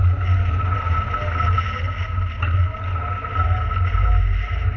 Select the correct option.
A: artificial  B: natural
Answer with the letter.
B